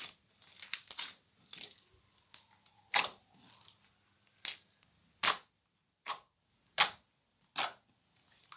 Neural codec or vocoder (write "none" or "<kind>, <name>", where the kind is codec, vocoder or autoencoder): none